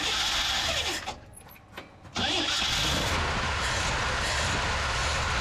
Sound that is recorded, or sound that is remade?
recorded